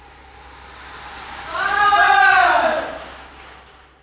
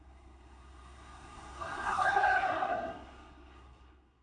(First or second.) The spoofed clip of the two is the second